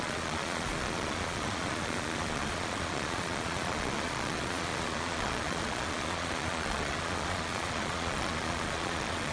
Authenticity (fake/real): fake